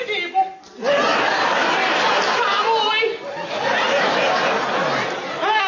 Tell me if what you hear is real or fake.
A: real